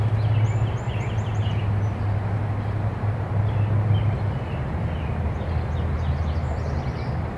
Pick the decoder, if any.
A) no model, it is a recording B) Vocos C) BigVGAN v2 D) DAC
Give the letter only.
C